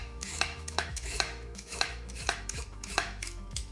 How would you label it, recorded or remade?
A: remade